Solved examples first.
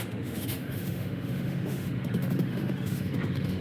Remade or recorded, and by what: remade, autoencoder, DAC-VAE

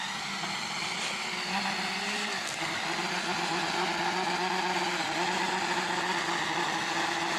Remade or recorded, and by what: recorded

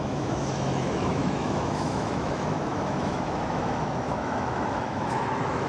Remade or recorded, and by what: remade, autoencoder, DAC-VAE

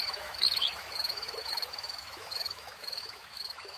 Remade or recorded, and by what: remade, autoencoder, DAC-VAE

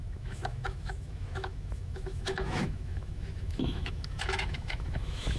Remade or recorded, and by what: remade, autoencoder, DAC-VAE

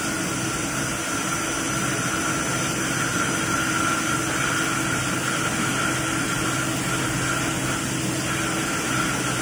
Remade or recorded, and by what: recorded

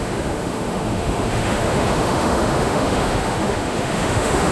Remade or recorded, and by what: remade, autoencoder, DAC-VAE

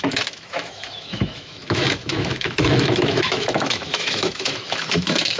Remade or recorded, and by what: remade, autoencoder, DAC-VAE